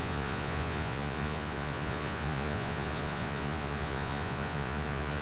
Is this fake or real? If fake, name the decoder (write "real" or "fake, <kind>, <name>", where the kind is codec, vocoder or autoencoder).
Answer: fake, vocoder, Vocos